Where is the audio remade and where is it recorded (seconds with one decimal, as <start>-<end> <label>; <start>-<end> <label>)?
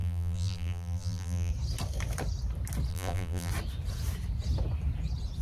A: 0.0-1.5 remade; 1.5-2.9 recorded; 2.9-3.5 remade; 3.5-5.4 recorded